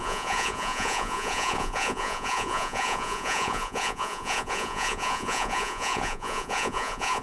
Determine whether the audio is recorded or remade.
remade